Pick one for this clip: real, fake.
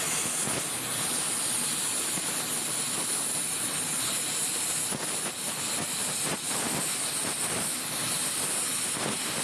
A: real